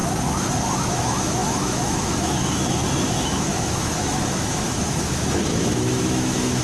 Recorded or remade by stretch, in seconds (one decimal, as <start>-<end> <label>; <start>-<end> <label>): 0.0-0.9 recorded; 0.9-6.6 remade